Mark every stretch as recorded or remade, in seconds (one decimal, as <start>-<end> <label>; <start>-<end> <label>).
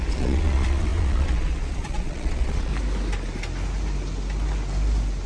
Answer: 0.0-2.7 remade; 2.7-5.3 recorded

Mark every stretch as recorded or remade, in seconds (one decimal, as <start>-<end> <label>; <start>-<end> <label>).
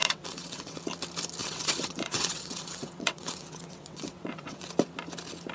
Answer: 0.0-0.8 remade; 0.8-1.4 recorded; 1.4-4.7 remade; 4.7-5.5 recorded